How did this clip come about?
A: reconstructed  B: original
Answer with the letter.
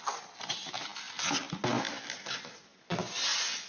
B